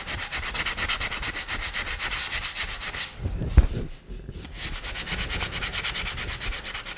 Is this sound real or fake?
real